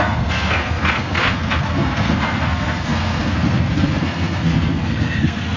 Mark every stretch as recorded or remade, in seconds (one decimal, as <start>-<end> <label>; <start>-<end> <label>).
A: 0.0-5.6 remade